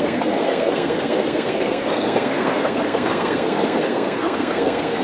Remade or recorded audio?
remade